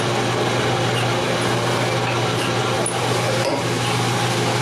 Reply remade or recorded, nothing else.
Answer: recorded